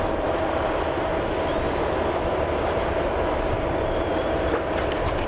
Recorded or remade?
remade